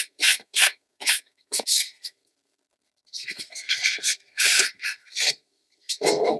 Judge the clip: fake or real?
fake